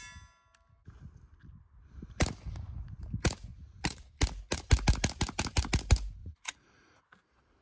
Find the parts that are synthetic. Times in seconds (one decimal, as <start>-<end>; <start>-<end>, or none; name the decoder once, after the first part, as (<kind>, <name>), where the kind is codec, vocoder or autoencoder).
3.5-4.1 (vocoder, Vocos); 6.2-7.0